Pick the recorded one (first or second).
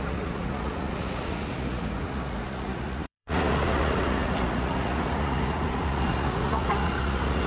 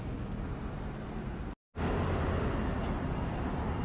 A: second